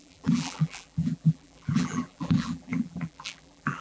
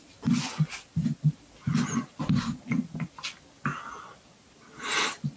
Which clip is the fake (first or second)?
first